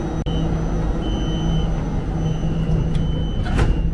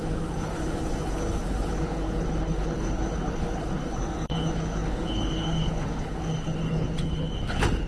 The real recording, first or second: first